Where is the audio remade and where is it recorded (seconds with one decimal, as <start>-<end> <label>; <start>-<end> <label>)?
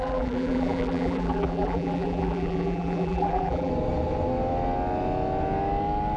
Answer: 0.0-3.7 remade; 3.7-6.2 recorded